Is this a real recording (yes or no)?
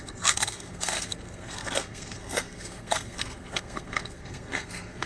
no